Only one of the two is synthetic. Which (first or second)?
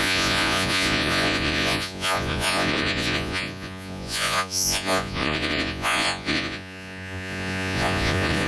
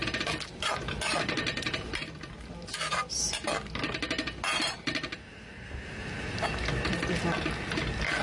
first